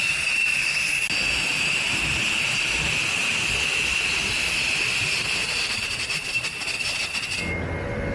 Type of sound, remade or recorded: recorded